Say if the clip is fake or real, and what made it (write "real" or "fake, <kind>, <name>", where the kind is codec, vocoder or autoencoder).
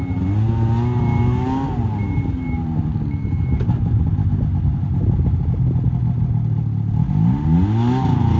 real